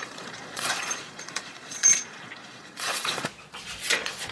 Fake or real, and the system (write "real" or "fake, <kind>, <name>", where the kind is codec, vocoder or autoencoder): fake, vocoder, Vocos